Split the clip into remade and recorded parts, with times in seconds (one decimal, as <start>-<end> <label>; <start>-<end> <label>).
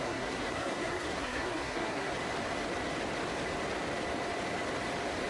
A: 0.0-2.1 remade; 2.1-5.3 recorded